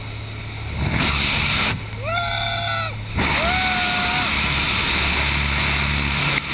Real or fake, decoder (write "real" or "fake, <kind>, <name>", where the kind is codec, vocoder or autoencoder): real